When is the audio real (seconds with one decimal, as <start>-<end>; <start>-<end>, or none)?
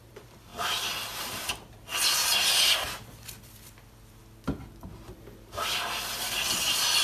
1.9-2.4; 4.2-5.5